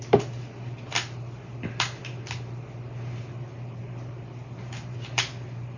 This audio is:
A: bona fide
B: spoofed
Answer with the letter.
A